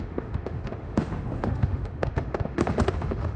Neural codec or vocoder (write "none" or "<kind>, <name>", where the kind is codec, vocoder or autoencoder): autoencoder, DAC-VAE